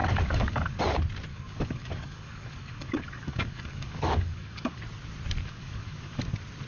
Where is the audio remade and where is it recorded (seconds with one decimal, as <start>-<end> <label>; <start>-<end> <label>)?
0.0-0.8 remade; 0.8-1.3 recorded; 1.3-4.8 remade; 4.8-5.4 recorded; 5.4-6.2 remade; 6.2-6.7 recorded